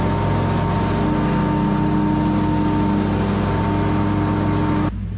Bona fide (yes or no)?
yes